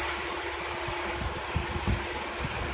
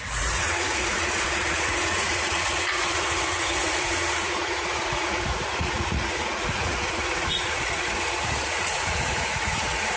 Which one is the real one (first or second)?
first